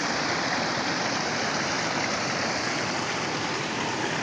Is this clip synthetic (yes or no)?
yes